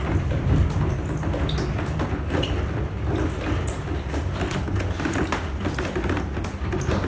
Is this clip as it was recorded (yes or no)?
yes